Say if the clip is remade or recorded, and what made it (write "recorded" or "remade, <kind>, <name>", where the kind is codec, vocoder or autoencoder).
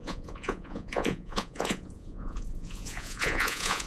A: remade, vocoder, Vocos